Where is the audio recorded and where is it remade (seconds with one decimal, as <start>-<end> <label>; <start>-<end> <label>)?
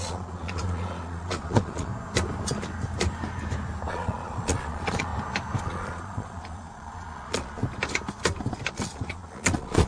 0.0-1.9 remade; 1.9-3.9 recorded; 3.9-5.1 remade; 5.1-5.6 recorded; 5.6-7.6 remade; 7.6-8.7 recorded; 8.7-9.9 remade